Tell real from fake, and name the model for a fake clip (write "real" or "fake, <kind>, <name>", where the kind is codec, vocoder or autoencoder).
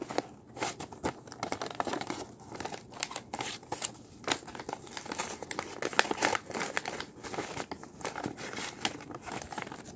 real